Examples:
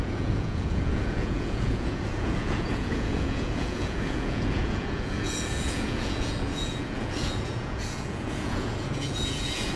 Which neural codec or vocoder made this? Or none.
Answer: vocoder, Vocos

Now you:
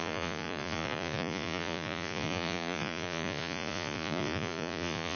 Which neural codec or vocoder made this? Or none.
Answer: vocoder, Vocos